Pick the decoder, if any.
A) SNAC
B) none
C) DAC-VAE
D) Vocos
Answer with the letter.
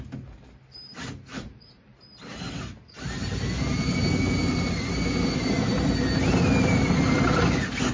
B